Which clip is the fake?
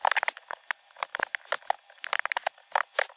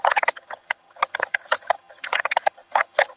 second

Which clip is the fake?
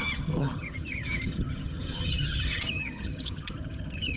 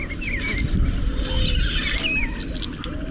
first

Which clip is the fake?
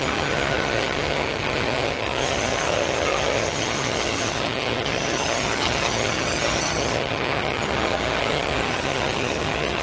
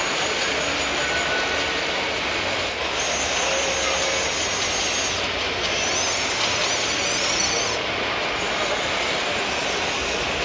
first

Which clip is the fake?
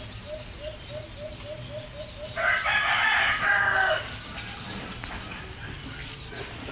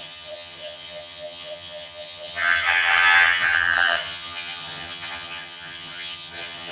second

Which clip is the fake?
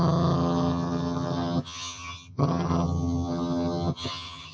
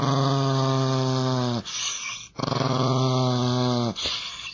first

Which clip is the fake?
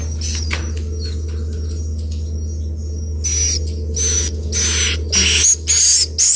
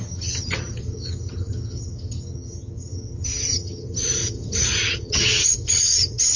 second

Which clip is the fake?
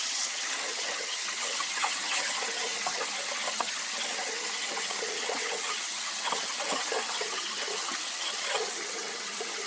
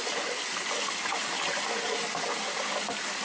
first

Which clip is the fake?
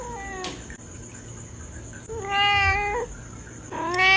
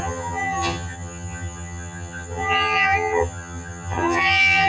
second